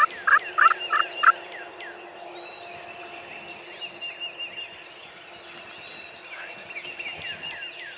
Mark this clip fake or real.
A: real